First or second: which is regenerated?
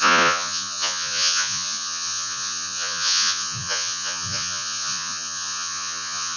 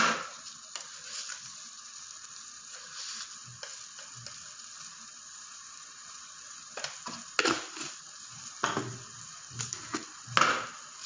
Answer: first